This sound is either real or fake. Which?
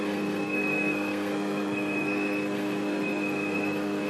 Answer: fake